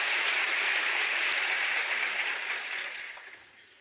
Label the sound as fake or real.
fake